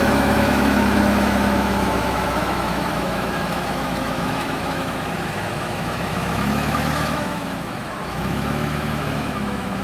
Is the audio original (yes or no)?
no